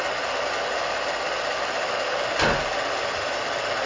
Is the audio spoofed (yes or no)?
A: no